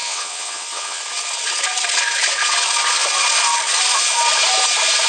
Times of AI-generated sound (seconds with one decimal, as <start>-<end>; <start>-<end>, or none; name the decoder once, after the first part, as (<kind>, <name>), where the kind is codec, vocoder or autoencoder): 0.0-1.0 (vocoder, WaveNeXt)